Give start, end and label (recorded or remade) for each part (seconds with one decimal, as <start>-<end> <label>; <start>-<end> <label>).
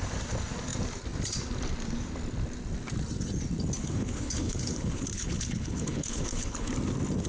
0.0-3.8 recorded; 3.8-6.7 remade; 6.7-7.3 recorded